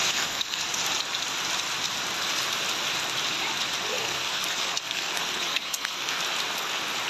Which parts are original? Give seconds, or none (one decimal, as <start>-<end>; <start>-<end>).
0.6-3.9; 6.2-7.1